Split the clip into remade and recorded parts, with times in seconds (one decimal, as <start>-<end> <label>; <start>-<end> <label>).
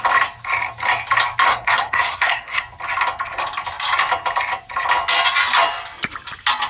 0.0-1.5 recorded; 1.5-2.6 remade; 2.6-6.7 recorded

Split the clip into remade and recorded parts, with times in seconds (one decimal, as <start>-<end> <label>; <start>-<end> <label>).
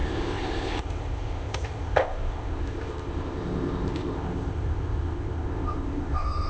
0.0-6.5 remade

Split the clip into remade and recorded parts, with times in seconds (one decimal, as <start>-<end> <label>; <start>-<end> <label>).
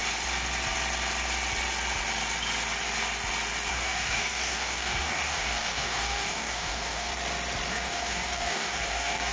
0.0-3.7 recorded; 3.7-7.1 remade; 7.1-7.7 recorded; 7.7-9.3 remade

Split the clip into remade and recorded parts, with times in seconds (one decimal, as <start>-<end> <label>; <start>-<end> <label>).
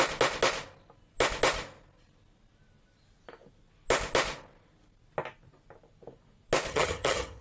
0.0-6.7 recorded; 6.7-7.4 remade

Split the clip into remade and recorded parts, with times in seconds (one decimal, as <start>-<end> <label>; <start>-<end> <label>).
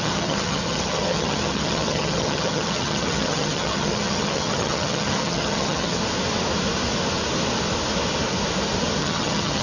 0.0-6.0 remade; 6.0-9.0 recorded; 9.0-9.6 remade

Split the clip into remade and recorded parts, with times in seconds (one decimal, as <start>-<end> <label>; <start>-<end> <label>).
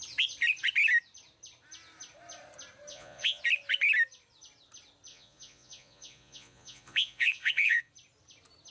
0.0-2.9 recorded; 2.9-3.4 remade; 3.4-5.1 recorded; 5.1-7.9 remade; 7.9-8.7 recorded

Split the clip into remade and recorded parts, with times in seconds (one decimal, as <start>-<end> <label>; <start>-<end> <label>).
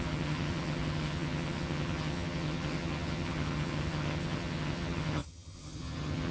0.0-6.3 remade